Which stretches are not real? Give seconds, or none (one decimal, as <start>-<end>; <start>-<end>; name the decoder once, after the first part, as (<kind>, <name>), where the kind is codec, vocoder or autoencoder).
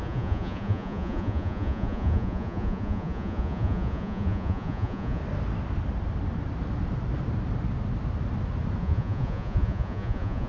0.0-5.2 (vocoder, Vocos); 8.8-10.5